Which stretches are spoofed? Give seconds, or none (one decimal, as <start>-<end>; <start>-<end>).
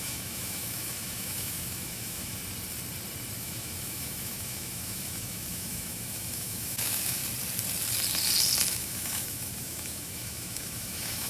0.0-2.4; 3.4-7.2; 8.7-11.3